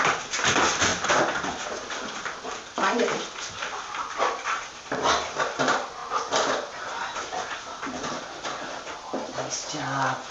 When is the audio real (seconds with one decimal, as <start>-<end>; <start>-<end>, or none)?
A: 0.0-3.1; 5.4-10.3